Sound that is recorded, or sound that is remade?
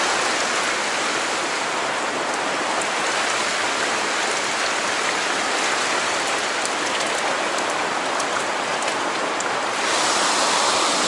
recorded